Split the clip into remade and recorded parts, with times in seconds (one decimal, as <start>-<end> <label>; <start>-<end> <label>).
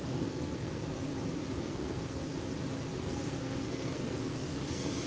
0.0-1.1 remade; 1.1-1.6 recorded; 1.6-2.2 remade; 2.2-3.0 recorded; 3.0-5.1 remade